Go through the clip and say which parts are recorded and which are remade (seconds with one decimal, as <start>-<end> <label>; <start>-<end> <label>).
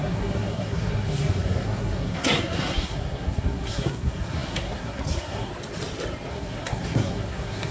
0.0-5.5 remade; 5.5-6.3 recorded; 6.3-7.7 remade